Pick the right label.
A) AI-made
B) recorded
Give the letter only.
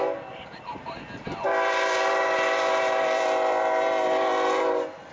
A